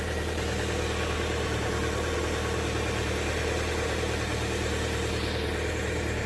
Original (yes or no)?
no